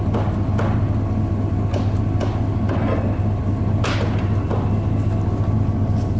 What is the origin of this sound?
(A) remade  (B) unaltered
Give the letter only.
B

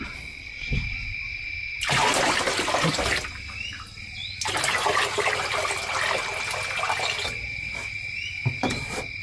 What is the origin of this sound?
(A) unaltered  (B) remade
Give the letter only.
A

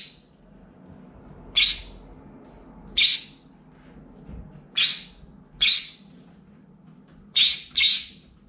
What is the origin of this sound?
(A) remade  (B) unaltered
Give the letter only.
B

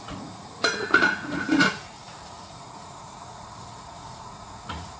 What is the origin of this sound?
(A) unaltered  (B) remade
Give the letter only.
B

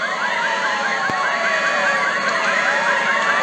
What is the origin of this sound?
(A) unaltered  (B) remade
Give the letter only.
A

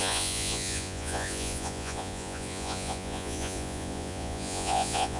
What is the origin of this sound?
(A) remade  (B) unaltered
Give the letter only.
A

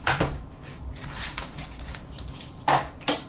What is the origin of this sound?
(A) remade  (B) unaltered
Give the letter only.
A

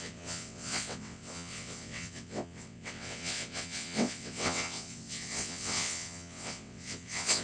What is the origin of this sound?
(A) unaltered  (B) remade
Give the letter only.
B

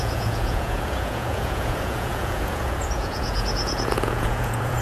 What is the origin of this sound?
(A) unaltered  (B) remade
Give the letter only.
B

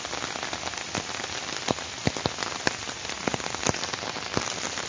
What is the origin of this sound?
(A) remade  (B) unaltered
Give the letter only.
B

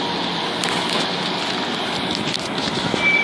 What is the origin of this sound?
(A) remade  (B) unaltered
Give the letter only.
B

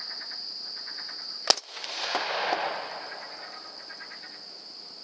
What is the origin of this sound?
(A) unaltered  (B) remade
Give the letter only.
A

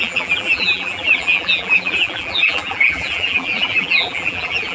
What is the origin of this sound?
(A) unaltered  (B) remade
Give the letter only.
B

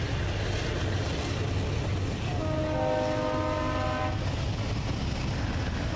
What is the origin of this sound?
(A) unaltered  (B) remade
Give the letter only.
A